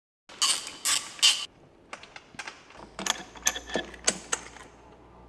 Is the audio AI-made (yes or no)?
no